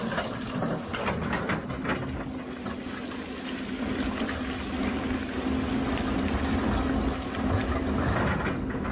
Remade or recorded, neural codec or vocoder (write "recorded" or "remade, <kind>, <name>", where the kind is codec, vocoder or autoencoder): recorded